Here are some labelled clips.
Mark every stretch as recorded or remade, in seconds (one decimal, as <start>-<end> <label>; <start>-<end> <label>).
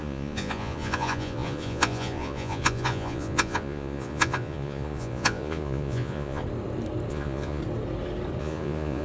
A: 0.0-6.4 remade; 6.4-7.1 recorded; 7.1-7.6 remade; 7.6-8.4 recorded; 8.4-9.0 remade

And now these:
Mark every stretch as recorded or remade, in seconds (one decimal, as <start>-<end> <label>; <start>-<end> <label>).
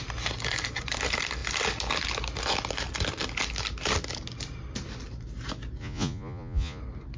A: 0.0-5.8 recorded; 5.8-6.8 remade; 6.8-7.2 recorded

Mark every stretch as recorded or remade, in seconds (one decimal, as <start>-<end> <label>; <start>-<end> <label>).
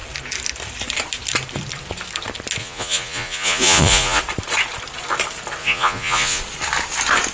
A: 0.0-2.6 recorded; 2.6-4.2 remade; 4.2-5.6 recorded; 5.6-6.4 remade; 6.4-7.3 recorded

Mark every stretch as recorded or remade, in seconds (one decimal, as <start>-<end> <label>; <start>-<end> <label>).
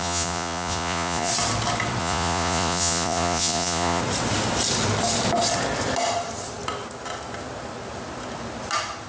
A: 0.0-1.3 remade; 1.3-2.0 recorded; 2.0-4.0 remade; 4.0-9.1 recorded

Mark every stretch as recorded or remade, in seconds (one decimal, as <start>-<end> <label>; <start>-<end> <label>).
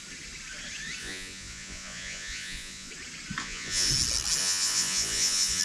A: 0.0-1.0 recorded; 1.0-2.9 remade; 2.9-3.4 recorded; 3.4-3.9 remade; 3.9-4.4 recorded; 4.4-5.6 remade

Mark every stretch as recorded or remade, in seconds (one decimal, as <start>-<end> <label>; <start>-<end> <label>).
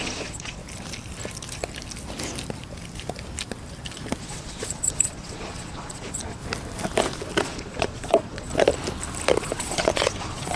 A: 0.0-0.6 remade; 0.6-4.2 recorded; 4.2-6.4 remade; 6.4-7.4 recorded; 7.4-8.5 remade; 8.5-9.4 recorded; 9.4-10.6 remade